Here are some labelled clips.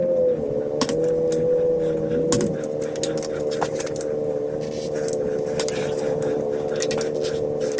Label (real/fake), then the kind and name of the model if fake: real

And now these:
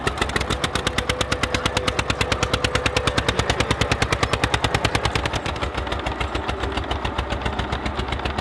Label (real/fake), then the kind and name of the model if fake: real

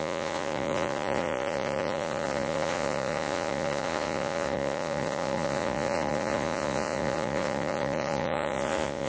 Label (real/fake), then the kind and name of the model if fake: fake, vocoder, Vocos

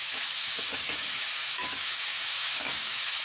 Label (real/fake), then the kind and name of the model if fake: fake, autoencoder, DAC-VAE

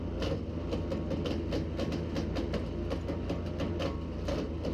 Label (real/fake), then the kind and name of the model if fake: real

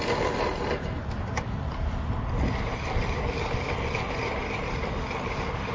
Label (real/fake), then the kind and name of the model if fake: real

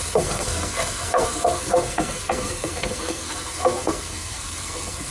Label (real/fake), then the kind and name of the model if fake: fake, codec, SNAC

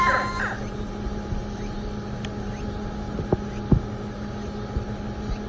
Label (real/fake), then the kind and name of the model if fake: real